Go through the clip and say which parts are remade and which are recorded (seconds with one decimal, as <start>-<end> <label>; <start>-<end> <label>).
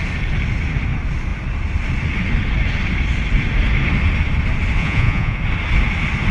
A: 0.0-4.8 recorded; 4.8-5.4 remade; 5.4-6.3 recorded